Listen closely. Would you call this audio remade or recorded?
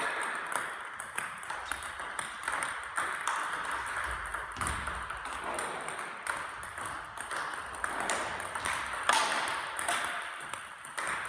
recorded